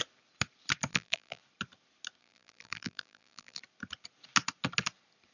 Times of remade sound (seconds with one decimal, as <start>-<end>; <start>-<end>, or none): 0.9-1.4; 2.2-3.6

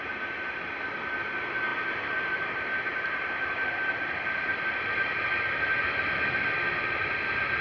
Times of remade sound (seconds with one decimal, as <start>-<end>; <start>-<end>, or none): 1.7-5.4

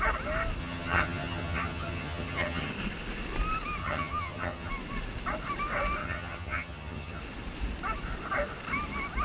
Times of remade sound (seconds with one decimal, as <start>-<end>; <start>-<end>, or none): 0.6-2.7; 3.8-4.7; 6.0-7.2

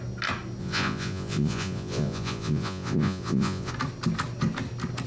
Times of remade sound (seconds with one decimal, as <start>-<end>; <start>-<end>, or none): 0.6-3.7